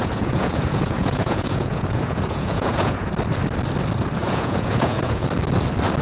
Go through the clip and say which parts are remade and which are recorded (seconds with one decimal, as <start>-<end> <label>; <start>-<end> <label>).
0.0-3.1 remade; 3.1-4.2 recorded; 4.2-5.3 remade; 5.3-6.0 recorded